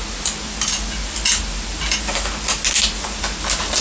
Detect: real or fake real